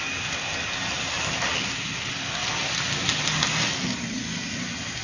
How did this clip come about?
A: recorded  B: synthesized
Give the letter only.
A